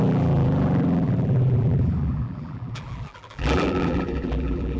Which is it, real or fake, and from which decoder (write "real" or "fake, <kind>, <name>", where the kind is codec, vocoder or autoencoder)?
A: fake, vocoder, BigVGAN v2